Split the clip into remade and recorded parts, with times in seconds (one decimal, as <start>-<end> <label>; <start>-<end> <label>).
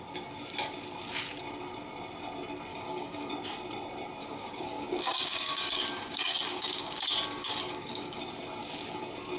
0.0-2.7 recorded; 2.7-3.3 remade; 3.3-4.2 recorded; 4.2-8.2 remade; 8.2-9.4 recorded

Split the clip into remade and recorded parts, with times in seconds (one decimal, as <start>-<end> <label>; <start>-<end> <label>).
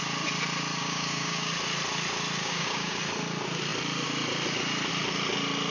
0.0-0.8 recorded; 0.8-1.5 remade; 1.5-2.4 recorded; 2.4-3.0 remade; 3.0-5.7 recorded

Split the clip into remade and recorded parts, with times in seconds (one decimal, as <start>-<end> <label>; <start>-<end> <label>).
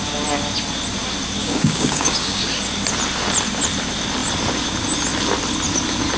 0.0-1.4 recorded; 1.4-2.4 remade; 2.4-6.2 recorded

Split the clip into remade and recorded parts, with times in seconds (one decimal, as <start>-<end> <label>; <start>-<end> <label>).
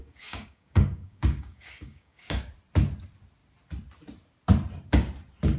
0.0-2.5 remade; 2.5-5.6 recorded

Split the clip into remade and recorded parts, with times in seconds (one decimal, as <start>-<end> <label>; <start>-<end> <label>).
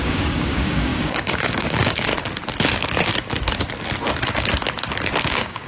0.0-2.1 remade; 2.1-5.2 recorded; 5.2-5.7 remade